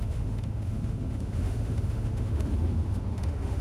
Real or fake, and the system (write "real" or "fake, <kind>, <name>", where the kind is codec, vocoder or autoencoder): fake, autoencoder, DAC-VAE